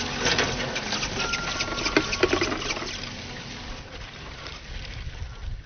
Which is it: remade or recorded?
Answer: recorded